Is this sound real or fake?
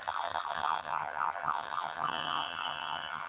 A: fake